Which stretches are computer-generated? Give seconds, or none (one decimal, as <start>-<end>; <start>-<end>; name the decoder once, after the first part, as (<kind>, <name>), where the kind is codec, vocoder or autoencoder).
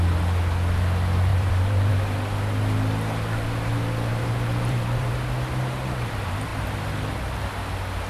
1.3-1.9 (vocoder, BigVGAN v2); 4.1-5.1